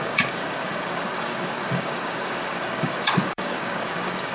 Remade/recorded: remade